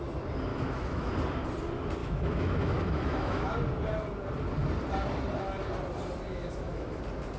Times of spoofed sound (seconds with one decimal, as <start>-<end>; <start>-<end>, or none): 0.5-1.1; 2.0-3.5; 6.3-7.0